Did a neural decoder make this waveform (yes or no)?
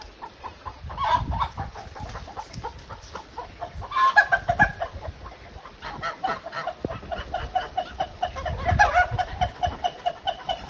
yes